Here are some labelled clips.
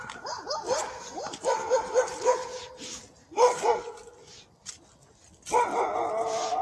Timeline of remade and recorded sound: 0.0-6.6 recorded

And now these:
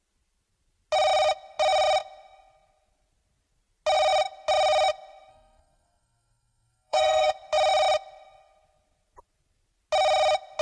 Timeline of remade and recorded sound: 0.0-5.3 recorded; 5.3-7.3 remade; 7.3-10.6 recorded

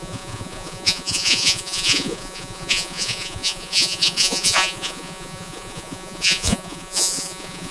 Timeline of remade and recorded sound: 0.0-7.7 remade

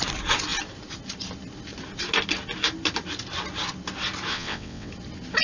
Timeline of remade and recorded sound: 0.0-4.3 recorded; 4.3-4.9 remade; 4.9-5.4 recorded

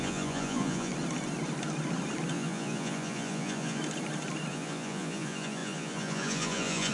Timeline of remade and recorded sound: 0.0-0.9 remade; 0.9-2.3 recorded; 2.3-3.8 remade; 3.8-4.5 recorded; 4.5-6.9 remade

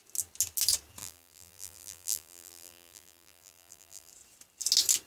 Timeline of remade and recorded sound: 0.0-1.0 recorded; 1.0-4.1 remade; 4.1-5.1 recorded